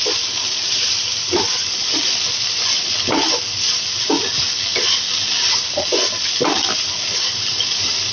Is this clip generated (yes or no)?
no